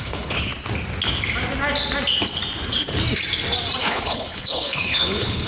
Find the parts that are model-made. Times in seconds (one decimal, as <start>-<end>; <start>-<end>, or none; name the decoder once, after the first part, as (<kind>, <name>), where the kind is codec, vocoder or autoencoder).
0.0-0.5 (codec, HILCodec); 3.8-5.5